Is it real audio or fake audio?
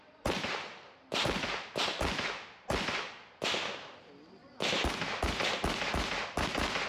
real